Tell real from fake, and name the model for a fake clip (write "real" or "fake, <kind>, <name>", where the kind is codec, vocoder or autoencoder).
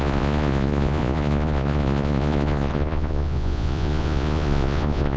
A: fake, vocoder, Vocos